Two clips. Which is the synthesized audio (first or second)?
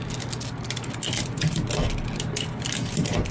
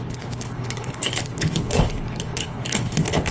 second